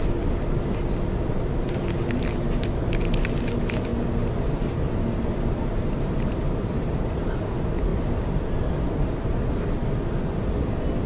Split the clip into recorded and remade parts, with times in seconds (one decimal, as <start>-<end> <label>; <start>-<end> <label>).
0.0-11.1 recorded